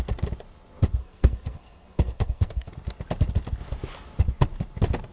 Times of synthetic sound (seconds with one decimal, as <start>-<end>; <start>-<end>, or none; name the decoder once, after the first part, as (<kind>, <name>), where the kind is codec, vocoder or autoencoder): 1.0-2.7 (codec, SNAC)